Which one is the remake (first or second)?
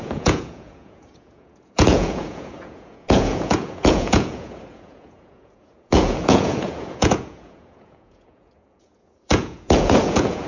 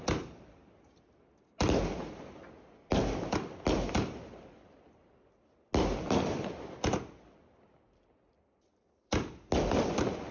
first